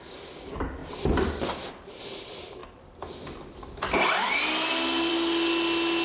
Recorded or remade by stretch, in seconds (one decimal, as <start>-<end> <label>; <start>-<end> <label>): 0.0-6.0 recorded